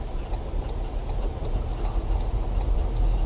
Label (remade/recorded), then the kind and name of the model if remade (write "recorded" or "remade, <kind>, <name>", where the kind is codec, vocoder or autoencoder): recorded